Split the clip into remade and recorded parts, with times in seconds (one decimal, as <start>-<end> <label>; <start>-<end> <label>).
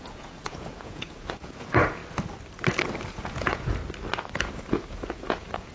0.0-2.0 remade; 2.0-3.1 recorded; 3.1-3.8 remade; 3.8-4.4 recorded; 4.4-5.7 remade